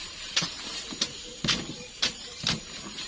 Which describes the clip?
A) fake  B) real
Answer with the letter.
A